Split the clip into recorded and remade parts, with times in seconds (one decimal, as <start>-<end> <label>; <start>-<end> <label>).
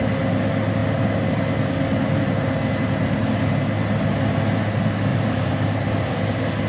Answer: 0.0-5.1 recorded; 5.1-6.1 remade; 6.1-6.7 recorded